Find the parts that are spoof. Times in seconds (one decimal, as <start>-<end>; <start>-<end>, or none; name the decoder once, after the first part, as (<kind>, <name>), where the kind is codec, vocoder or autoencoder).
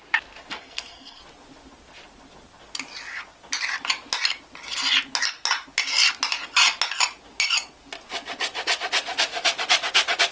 0.5-1.2 (codec, SNAC)